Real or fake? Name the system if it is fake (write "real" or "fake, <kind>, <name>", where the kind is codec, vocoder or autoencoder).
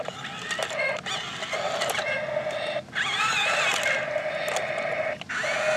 real